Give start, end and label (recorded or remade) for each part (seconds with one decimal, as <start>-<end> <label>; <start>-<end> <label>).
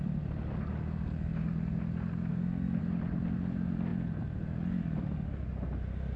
0.0-2.3 recorded; 2.3-2.8 remade; 2.8-6.2 recorded